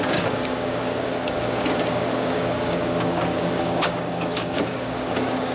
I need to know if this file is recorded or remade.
remade